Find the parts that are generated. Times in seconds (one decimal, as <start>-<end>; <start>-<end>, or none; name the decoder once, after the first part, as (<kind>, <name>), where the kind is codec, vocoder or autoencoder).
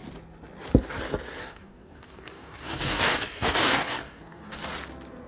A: 1.4-4.6 (codec, DAC)